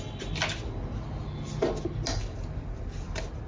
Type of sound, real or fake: real